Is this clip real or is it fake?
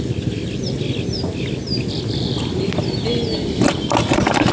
real